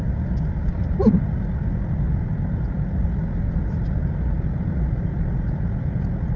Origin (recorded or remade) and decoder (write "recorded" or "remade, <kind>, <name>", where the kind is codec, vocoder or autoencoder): recorded